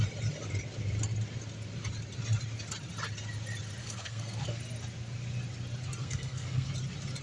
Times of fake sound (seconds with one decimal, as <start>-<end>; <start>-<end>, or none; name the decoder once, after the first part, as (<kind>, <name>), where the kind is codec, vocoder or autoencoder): 3.8-4.6 (codec, SNAC); 6.0-6.7